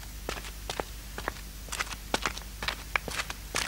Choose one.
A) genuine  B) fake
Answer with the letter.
A